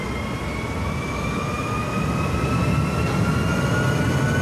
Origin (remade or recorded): recorded